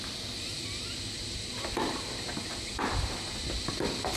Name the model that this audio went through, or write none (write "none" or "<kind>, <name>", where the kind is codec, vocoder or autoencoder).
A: none